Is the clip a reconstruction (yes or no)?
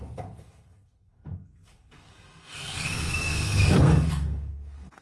yes